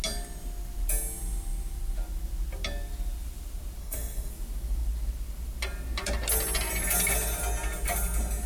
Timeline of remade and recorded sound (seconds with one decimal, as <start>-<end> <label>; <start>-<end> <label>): 0.0-3.8 recorded; 3.8-4.3 remade; 4.3-8.5 recorded